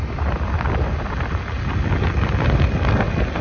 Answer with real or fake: real